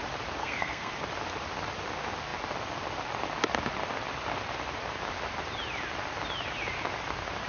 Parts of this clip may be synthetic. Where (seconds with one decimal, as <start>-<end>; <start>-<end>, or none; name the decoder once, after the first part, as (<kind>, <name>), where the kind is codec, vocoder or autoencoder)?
0.4-0.9 (codec, SNAC)